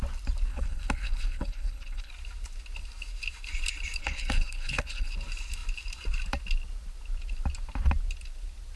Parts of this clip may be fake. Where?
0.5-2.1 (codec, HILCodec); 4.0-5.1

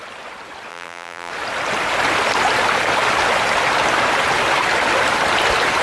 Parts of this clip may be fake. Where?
0.7-1.3 (vocoder, BigVGAN v2)

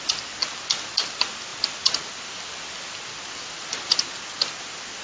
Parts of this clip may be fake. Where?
none

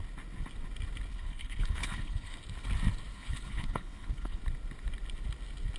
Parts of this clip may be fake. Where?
1.1-2.4 (codec, HILCodec); 3.1-4.4

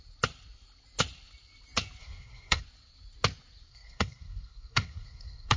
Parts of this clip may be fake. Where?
2.0-2.6 (codec, SNAC); 3.7-5.6

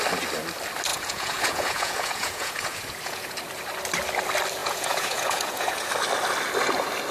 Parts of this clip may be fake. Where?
0.9-3.4 (vocoder, Vocos); 4.6-5.9

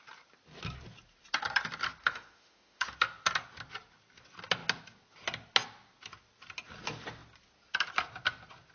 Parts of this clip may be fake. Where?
2.0-2.9 (autoencoder, DAC-VAE)

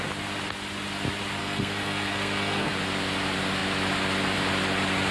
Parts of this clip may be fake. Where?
1.4-2.7 (codec, SNAC)